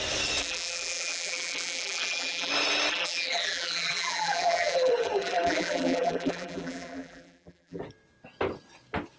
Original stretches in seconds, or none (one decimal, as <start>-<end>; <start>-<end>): 0.0-0.4; 2.5-2.9; 7.8-9.2